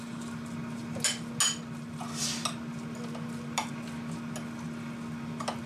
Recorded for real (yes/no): yes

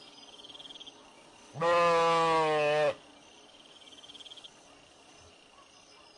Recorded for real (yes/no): yes